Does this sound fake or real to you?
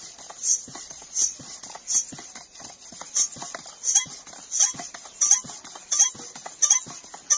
real